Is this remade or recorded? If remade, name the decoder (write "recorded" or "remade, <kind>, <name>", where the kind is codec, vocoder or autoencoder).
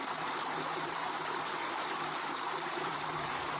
remade, vocoder, BigVGAN v2